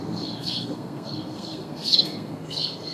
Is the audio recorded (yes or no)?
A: no